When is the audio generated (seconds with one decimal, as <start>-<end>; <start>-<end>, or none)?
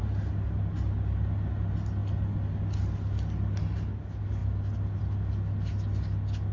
none